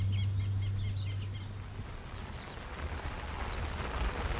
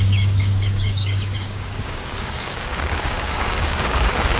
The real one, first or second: first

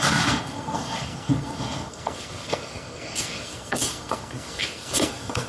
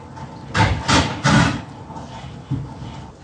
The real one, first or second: second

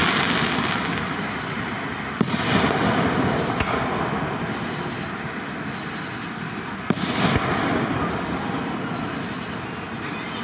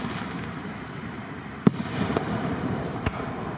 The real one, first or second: first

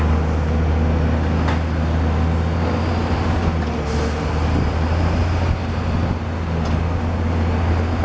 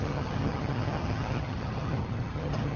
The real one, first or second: first